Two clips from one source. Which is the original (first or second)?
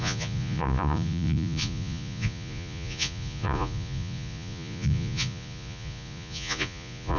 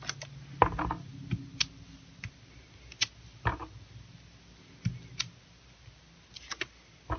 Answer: second